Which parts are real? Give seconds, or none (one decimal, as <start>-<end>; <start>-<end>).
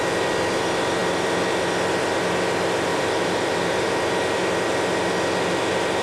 0.0-2.9; 4.0-6.0